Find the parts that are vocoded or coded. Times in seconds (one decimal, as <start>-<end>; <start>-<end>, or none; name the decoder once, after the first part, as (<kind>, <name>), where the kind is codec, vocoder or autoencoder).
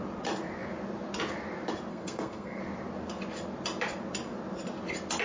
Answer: 1.9-2.6 (codec, SNAC)